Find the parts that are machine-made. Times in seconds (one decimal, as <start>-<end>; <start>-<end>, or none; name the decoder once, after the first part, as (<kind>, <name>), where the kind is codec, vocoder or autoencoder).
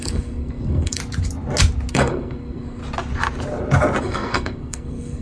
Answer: 0.0-1.0 (codec, SNAC); 1.9-2.8; 4.0-5.2